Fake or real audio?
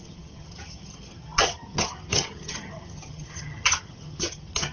fake